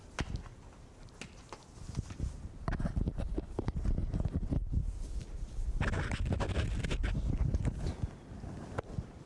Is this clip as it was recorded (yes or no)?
yes